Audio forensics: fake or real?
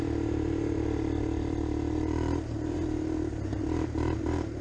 fake